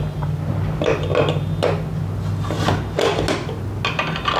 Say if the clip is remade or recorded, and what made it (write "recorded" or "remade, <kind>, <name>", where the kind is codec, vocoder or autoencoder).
recorded